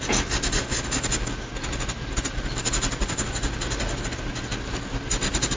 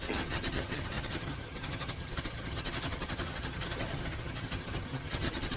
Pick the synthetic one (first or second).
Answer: second